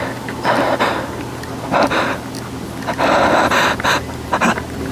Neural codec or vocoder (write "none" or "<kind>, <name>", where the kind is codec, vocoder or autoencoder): none